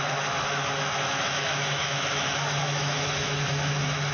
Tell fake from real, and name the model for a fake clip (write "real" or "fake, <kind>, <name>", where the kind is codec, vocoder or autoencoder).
fake, autoencoder, DAC-VAE